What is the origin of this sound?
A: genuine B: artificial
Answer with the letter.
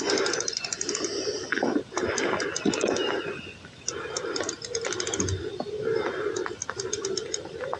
A